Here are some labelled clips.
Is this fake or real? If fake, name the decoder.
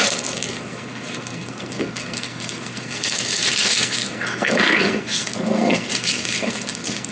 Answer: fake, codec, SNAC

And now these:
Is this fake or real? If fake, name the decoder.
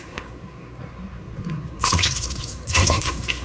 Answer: fake, codec, SNAC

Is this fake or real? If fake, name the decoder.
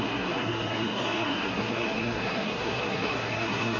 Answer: fake, codec, SNAC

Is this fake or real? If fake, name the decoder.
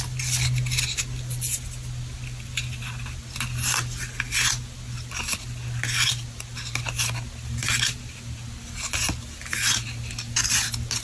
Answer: real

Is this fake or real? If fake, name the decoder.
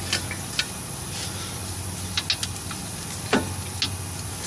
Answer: real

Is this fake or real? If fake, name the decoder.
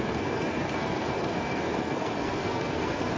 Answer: fake, codec, SNAC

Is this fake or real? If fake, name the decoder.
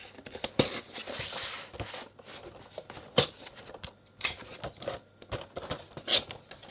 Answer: real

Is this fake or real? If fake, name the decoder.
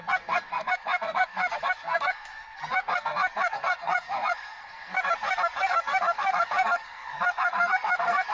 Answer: fake, codec, SNAC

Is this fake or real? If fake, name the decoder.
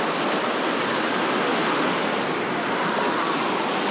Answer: real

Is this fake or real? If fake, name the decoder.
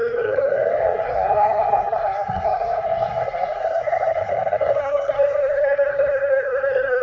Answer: fake, codec, SNAC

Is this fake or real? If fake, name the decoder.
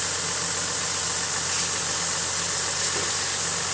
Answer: real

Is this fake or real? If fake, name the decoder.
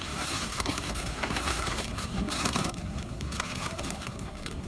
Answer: fake, codec, SNAC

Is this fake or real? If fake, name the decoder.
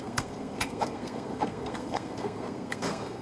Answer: fake, codec, SNAC